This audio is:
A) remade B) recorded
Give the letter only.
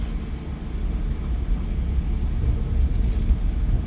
B